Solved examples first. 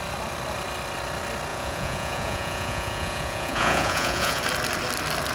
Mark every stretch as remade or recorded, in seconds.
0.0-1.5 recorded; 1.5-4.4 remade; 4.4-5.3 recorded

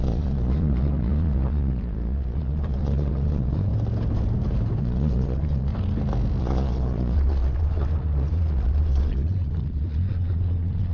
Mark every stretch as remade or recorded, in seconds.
0.0-3.7 remade; 3.7-4.8 recorded; 4.8-5.7 remade; 5.7-6.4 recorded; 6.4-10.9 remade